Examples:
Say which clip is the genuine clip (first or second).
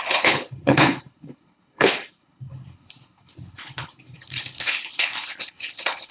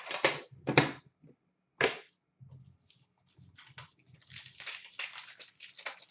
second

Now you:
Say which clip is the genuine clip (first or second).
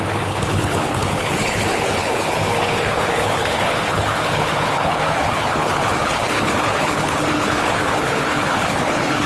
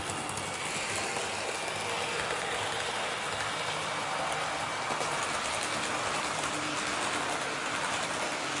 second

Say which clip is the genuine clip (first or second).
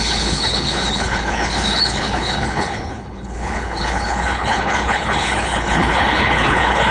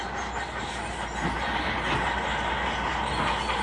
second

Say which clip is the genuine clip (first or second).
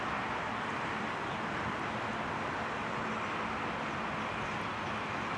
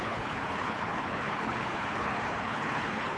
first